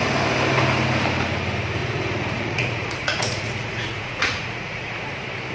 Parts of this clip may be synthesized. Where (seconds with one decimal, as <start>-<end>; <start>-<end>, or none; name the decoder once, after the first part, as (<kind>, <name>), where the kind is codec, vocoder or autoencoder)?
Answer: 1.8-5.1 (vocoder, Vocos)

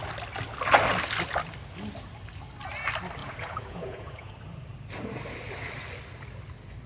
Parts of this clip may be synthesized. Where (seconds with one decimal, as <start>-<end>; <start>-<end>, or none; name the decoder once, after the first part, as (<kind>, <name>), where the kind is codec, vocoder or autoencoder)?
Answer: 3.2-4.3 (vocoder, Vocos)

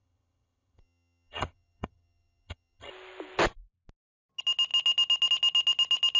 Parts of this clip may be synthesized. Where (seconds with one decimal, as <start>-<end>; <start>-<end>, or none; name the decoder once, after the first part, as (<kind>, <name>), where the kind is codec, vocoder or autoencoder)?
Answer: 0.0-2.9 (vocoder, HiFi-GAN)

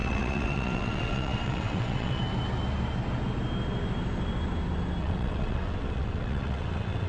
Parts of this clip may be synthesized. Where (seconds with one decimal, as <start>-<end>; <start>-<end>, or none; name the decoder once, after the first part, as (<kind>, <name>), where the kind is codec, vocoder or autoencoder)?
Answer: 0.0-2.2 (vocoder, WaveNeXt); 5.0-7.1

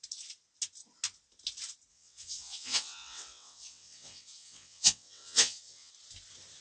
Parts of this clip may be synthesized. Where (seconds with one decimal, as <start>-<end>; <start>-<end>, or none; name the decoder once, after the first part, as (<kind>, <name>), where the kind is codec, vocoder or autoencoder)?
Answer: 1.9-5.9 (vocoder, WaveNeXt)